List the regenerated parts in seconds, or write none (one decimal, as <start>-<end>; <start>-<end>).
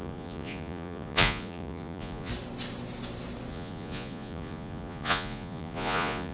0.0-2.3; 3.5-6.3